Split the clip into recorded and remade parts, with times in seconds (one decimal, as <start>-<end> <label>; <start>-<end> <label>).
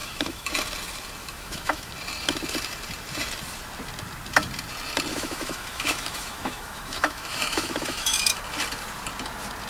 0.0-0.5 remade; 0.5-1.2 recorded; 1.2-1.9 remade; 1.9-5.1 recorded; 5.1-8.4 remade; 8.4-9.7 recorded